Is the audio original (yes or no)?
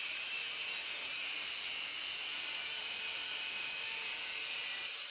no